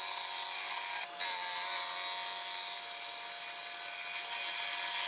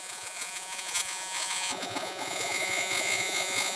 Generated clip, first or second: second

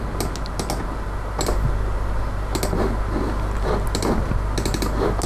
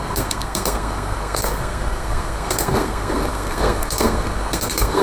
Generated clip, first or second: second